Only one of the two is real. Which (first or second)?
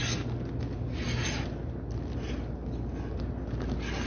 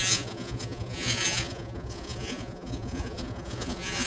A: first